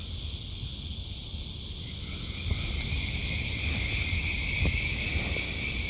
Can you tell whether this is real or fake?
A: real